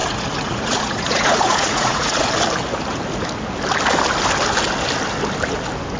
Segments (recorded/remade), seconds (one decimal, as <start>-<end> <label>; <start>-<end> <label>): 0.0-2.3 remade; 2.3-6.0 recorded